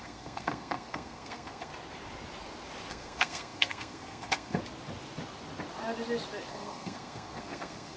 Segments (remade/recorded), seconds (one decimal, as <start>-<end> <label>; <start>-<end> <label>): 0.0-1.7 remade; 1.7-2.9 recorded; 2.9-4.6 remade; 4.6-6.5 recorded; 6.5-8.0 remade